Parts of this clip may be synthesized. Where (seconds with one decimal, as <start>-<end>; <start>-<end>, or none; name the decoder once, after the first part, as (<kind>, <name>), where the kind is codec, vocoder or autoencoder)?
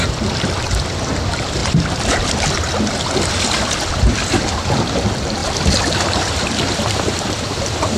0.0-8.0 (vocoder, BigVGAN v2)